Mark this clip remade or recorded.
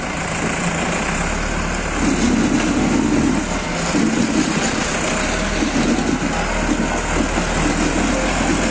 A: recorded